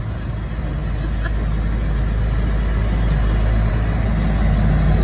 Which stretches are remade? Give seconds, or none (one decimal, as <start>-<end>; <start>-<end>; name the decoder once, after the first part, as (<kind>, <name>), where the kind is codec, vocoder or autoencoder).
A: none